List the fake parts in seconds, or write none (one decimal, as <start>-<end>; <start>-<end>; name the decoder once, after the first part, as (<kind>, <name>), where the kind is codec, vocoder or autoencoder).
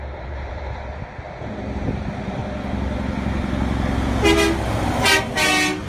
0.0-2.4 (vocoder, BigVGAN v2)